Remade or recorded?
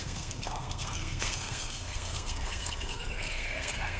remade